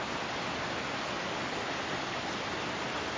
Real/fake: real